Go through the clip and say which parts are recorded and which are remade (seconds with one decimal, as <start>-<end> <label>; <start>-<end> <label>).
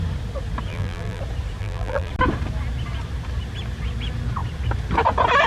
0.0-0.7 recorded; 0.7-1.2 remade; 1.2-1.6 recorded; 1.6-2.1 remade; 2.1-5.5 recorded